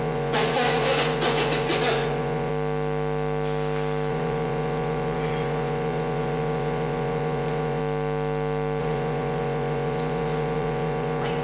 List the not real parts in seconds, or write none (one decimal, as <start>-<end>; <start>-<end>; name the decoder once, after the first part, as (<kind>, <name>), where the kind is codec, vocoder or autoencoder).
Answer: 0.0-2.5 (vocoder, Vocos); 4.1-7.8; 8.8-11.4